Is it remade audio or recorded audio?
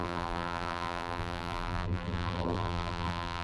remade